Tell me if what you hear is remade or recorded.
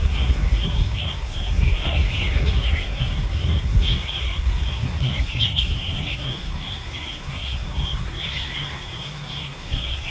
remade